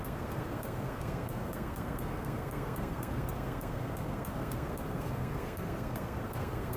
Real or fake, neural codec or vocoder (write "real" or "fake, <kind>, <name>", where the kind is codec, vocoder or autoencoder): fake, codec, SNAC